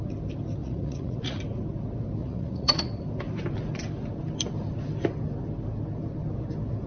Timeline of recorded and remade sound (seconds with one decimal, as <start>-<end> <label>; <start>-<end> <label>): 0.0-0.6 recorded; 0.6-1.4 remade; 1.4-2.2 recorded; 2.2-2.9 remade; 2.9-6.9 recorded